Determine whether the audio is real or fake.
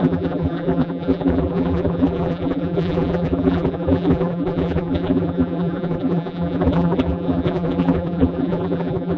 fake